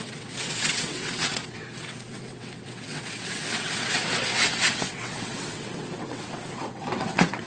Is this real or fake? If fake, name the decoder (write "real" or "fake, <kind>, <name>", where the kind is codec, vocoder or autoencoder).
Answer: fake, vocoder, WaveNeXt